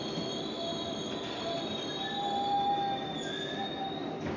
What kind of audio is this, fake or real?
real